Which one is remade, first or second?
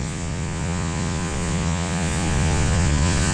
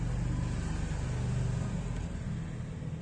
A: first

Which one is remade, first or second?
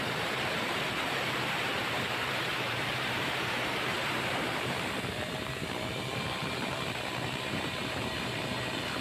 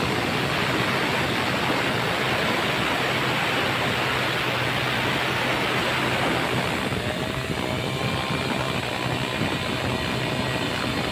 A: first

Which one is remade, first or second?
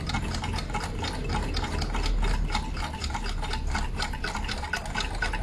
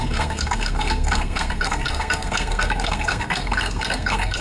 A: second